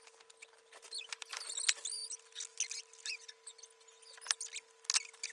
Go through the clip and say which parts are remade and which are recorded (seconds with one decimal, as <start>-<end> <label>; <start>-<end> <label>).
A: 0.0-5.3 recorded